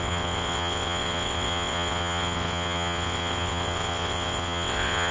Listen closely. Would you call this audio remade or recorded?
remade